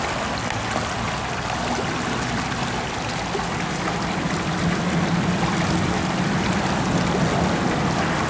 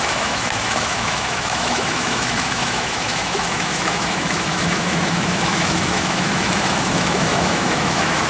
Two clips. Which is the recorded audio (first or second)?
first